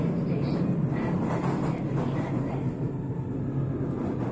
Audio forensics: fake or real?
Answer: real